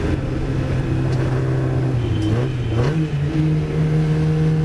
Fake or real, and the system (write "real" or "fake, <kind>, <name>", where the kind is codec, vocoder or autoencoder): real